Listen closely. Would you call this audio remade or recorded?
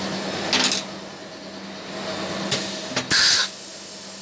recorded